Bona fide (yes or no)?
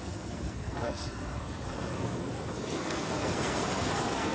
no